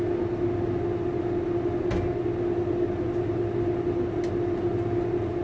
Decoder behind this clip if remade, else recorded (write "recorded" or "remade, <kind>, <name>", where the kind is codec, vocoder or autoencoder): recorded